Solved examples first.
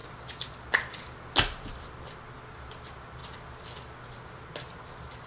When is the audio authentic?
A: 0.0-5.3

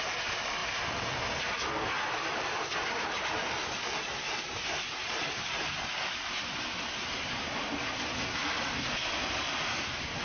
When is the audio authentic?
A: 0.0-10.2

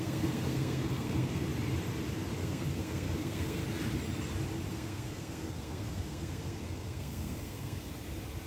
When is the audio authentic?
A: 1.5-2.4; 3.6-4.7; 7.9-8.5

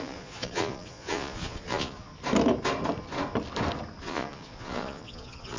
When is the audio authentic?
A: 2.1-4.0

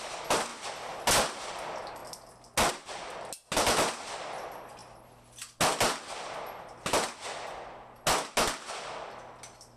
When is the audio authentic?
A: 0.0-9.8

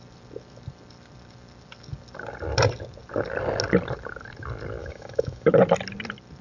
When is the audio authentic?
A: 0.0-4.8; 5.5-6.4

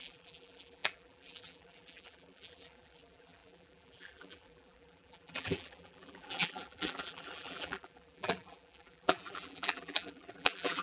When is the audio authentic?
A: none